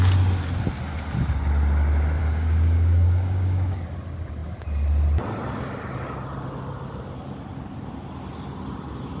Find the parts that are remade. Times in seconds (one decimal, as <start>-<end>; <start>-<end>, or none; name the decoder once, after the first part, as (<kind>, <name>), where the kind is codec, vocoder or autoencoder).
2.2-3.8 (codec, DAC)